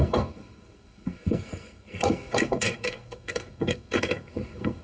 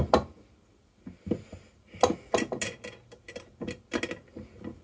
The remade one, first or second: first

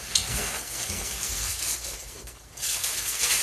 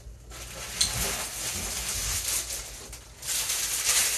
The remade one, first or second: first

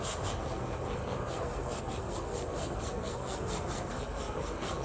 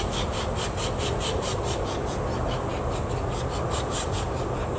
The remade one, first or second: first